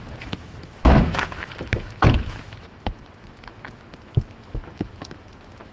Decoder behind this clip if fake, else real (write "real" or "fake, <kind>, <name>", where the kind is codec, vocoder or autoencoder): fake, autoencoder, DAC-VAE